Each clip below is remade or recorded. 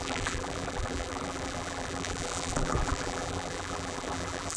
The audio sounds remade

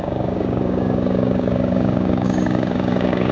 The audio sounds remade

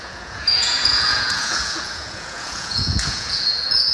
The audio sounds remade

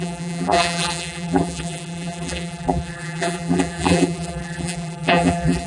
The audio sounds remade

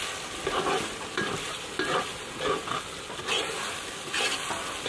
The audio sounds recorded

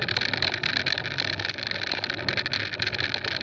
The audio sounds recorded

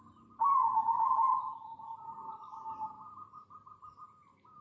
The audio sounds remade